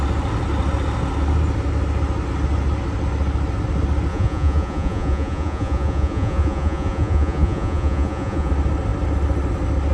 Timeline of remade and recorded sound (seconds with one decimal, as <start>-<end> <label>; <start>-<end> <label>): 0.0-4.1 recorded; 4.1-8.5 remade; 8.5-9.9 recorded